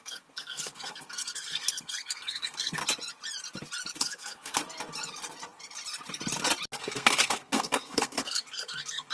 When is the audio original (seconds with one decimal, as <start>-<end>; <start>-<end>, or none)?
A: 2.8-4.0; 4.6-6.8